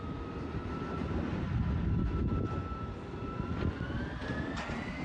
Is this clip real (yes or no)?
yes